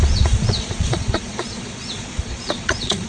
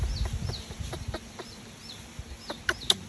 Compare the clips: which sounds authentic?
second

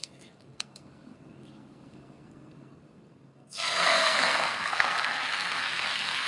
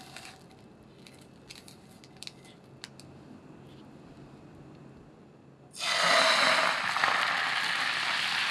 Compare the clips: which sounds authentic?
second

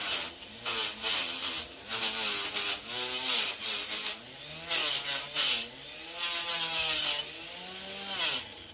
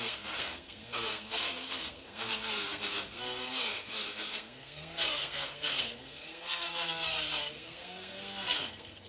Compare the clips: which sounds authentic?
first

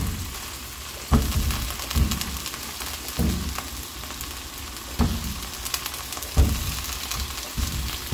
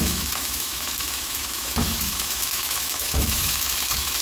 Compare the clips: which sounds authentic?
first